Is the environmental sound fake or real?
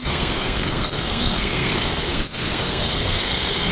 fake